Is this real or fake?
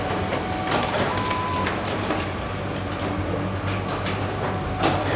real